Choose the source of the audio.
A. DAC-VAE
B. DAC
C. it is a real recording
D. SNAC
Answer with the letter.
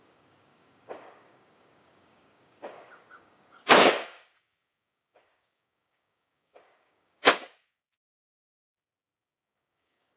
B